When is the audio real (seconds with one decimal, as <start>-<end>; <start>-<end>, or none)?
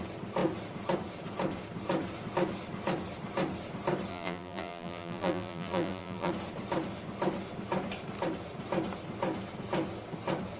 0.0-4.1; 6.3-10.6